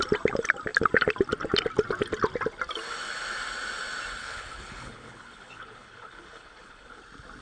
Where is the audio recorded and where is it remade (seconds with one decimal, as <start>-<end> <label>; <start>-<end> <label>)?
0.0-4.2 recorded; 4.2-7.0 remade; 7.0-7.4 recorded